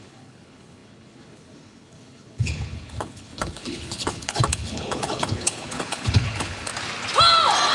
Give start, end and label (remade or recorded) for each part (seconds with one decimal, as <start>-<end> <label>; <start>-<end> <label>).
0.0-6.7 remade; 6.7-7.7 recorded